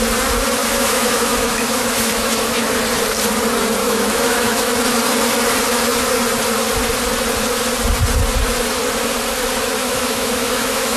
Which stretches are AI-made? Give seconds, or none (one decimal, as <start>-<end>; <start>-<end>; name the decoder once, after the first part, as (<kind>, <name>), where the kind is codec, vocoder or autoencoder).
0.6-2.7 (autoencoder, DAC-VAE); 3.8-4.7; 9.8-11.0